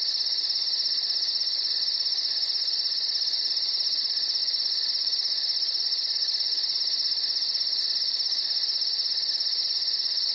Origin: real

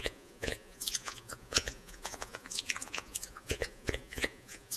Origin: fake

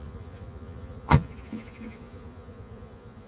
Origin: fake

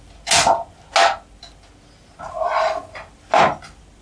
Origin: real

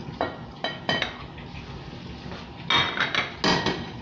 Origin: real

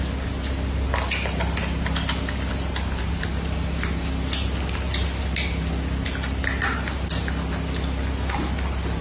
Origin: real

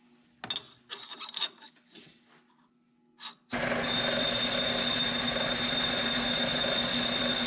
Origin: real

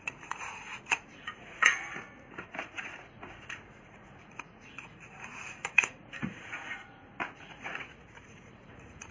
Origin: fake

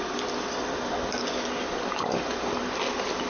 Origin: real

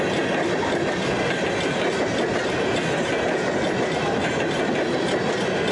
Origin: real